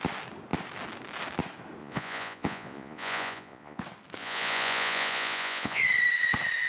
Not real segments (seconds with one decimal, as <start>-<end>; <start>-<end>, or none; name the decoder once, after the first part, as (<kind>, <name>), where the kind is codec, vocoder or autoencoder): 1.8-3.8 (vocoder, Vocos); 4.2-5.8